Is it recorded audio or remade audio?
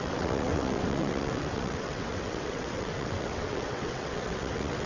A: remade